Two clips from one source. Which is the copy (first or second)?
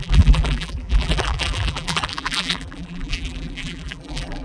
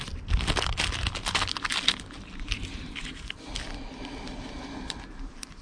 first